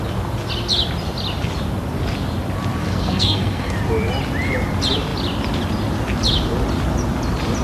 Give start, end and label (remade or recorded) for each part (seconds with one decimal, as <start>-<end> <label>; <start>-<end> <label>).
0.0-2.8 recorded; 2.8-3.7 remade; 3.7-7.6 recorded